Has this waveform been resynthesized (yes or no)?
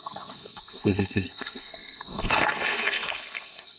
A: yes